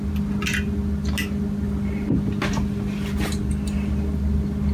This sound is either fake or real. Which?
real